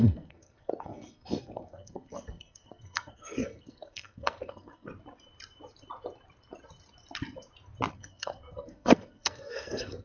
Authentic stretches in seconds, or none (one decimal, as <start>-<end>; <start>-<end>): 4.9-7.9